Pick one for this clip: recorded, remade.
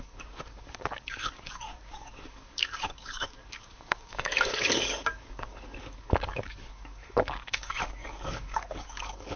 remade